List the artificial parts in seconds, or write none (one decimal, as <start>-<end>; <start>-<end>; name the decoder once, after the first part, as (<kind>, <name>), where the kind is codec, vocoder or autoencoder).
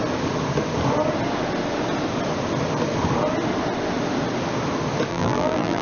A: 5.1-5.8 (vocoder, BigVGAN v2)